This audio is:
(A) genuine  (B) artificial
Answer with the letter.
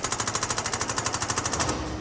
A